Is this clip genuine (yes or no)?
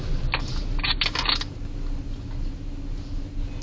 yes